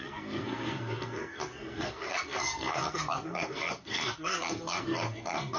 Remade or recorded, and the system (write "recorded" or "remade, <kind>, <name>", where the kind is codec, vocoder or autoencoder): remade, codec, SNAC